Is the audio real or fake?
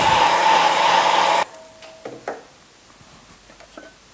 real